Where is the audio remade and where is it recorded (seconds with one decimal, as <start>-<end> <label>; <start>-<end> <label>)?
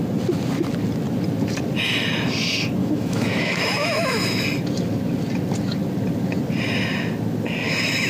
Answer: 0.0-2.8 recorded; 2.8-4.4 remade; 4.4-8.1 recorded